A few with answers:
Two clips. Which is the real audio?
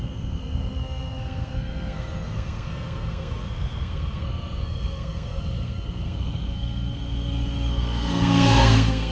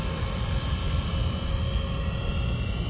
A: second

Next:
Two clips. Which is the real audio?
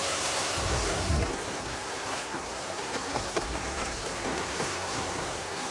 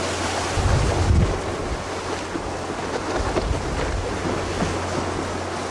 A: second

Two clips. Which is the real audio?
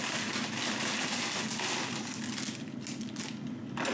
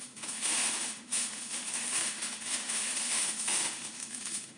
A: first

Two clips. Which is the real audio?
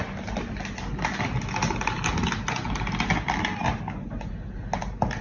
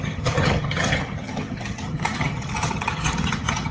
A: first